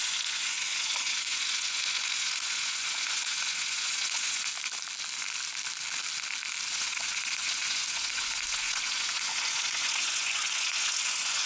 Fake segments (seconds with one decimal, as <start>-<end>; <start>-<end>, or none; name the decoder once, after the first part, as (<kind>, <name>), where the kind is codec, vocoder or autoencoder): 0.0-4.5 (vocoder, Vocos); 6.7-11.5